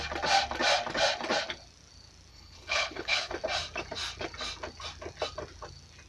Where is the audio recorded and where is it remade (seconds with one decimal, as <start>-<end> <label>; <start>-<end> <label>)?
0.0-2.3 recorded; 2.3-3.3 remade; 3.3-6.1 recorded